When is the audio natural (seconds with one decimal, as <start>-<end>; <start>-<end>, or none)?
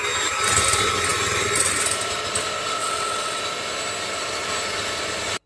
0.0-2.8; 3.4-5.5